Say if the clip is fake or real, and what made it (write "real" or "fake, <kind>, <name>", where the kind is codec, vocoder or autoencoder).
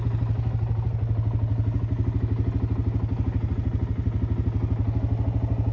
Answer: real